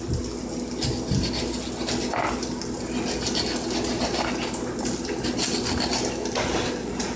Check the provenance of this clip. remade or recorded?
recorded